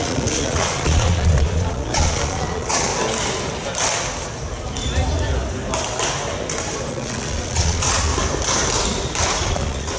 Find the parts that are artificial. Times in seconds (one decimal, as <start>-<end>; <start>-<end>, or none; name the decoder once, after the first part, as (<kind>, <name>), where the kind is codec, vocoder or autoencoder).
0.0-2.9 (vocoder, Vocos); 6.9-8.1; 9.5-10.0